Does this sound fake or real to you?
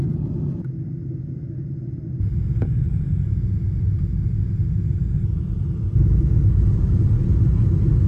real